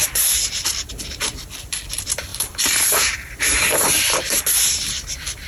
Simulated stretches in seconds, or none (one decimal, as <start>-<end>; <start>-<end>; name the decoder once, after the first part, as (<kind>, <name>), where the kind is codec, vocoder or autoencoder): 2.3-4.2 (vocoder, BigVGAN v2)